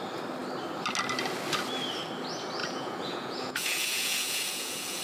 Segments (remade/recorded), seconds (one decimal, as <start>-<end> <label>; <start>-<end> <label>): 0.0-2.6 recorded; 2.6-5.0 remade